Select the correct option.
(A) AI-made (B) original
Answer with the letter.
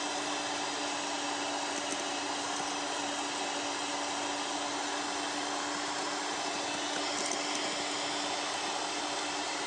B